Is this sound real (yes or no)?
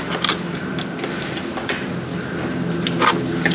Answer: yes